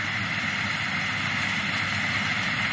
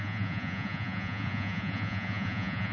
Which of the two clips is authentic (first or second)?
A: first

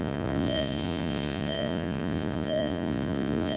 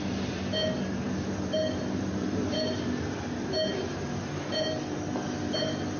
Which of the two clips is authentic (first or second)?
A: second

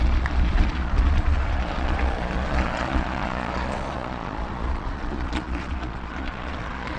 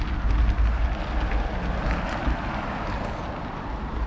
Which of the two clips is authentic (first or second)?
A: second